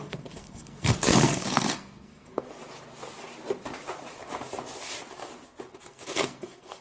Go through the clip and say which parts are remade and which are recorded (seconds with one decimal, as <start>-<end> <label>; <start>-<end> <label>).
0.0-2.6 remade; 2.6-5.8 recorded; 5.8-6.8 remade